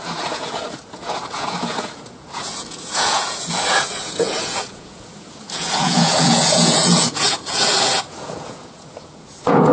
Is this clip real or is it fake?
fake